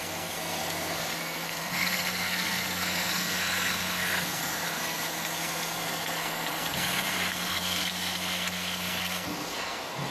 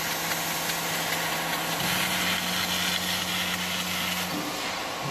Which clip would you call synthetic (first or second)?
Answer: first